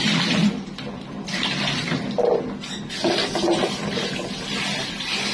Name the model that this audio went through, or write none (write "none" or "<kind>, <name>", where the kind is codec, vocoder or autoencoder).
none